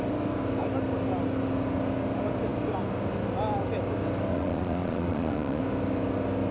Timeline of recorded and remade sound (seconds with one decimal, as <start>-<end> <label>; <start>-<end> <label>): 0.0-4.3 recorded; 4.3-5.6 remade; 5.6-6.5 recorded